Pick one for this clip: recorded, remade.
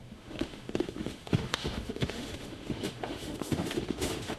remade